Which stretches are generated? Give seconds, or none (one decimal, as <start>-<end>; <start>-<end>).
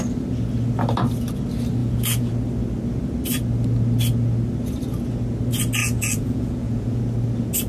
1.8-2.3; 5.8-7.0